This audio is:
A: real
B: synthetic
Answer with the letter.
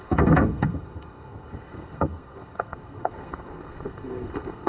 B